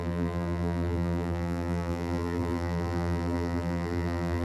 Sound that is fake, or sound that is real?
fake